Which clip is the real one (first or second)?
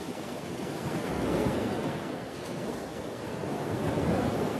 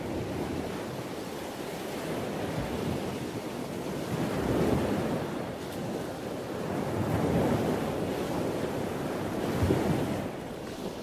second